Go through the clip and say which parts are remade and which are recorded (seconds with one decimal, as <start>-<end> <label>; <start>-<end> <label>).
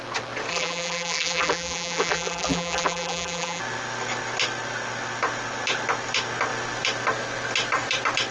0.0-0.5 recorded; 0.5-3.6 remade; 3.6-8.3 recorded